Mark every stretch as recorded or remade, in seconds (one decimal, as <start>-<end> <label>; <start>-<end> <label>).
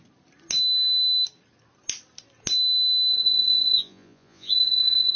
0.0-3.1 recorded; 3.1-5.2 remade